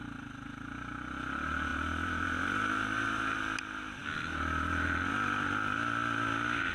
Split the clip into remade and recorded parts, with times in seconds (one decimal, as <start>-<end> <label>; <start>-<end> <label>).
0.0-1.7 recorded; 1.7-3.4 remade; 3.4-6.7 recorded

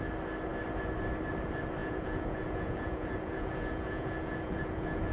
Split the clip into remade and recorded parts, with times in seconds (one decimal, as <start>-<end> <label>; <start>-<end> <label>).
0.0-1.8 recorded; 1.8-5.1 remade

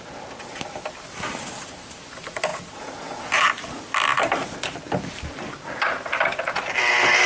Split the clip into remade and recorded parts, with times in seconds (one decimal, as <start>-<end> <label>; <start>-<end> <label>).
0.0-2.5 recorded; 2.5-3.2 remade; 3.2-7.3 recorded

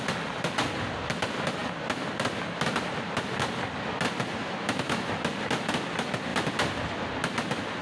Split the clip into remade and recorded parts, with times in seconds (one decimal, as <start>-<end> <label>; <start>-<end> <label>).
0.0-4.4 recorded; 4.4-5.1 remade; 5.1-7.8 recorded

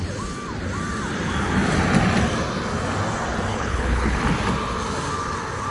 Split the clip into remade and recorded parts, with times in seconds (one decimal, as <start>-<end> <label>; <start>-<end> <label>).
0.0-3.5 recorded; 3.5-4.2 remade; 4.2-5.7 recorded

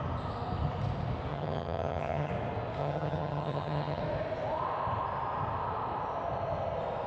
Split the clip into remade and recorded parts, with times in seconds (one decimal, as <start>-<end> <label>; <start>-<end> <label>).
0.0-1.3 recorded; 1.3-2.3 remade; 2.3-2.8 recorded; 2.8-4.0 remade; 4.0-7.1 recorded

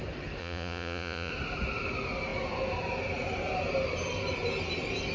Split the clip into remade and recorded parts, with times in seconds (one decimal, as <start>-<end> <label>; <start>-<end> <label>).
0.0-0.4 recorded; 0.4-1.3 remade; 1.3-5.1 recorded

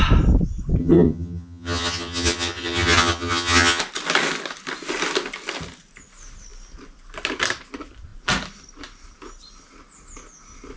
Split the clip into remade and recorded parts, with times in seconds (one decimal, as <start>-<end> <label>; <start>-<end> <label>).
0.0-0.8 recorded; 0.8-3.8 remade; 3.8-10.8 recorded